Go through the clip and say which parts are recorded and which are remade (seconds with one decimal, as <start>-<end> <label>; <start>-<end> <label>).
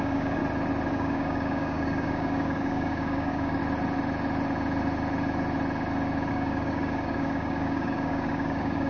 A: 0.0-0.4 remade; 0.4-0.9 recorded; 0.9-3.6 remade; 3.6-6.3 recorded; 6.3-8.9 remade